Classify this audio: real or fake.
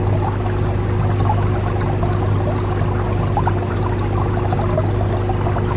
real